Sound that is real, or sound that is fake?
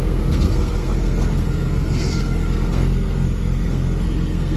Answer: fake